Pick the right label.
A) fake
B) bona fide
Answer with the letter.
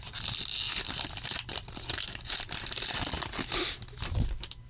B